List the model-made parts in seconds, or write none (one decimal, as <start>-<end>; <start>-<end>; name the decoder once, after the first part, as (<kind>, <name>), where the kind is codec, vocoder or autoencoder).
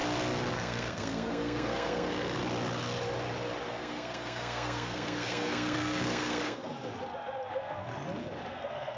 0.5-2.4 (codec, SNAC); 3.7-6.7; 7.5-7.9; 8.5-9.0